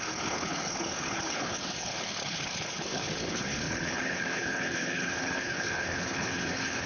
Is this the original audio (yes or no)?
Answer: no